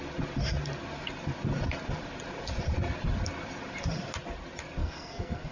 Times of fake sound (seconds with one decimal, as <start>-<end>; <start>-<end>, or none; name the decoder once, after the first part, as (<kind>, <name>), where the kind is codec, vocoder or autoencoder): 4.8-5.5 (codec, SNAC)